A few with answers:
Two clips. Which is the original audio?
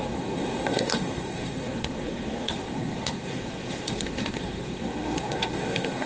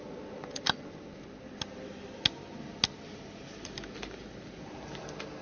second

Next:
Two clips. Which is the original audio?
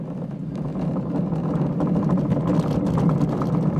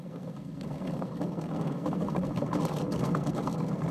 first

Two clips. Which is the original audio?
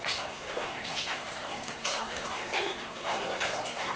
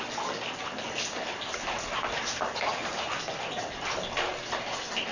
second